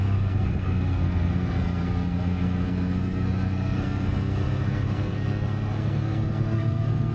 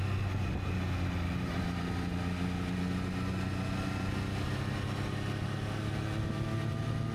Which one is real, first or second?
second